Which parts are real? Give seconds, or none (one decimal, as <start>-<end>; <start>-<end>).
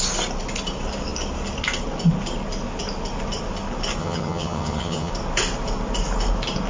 0.0-4.0; 5.1-6.7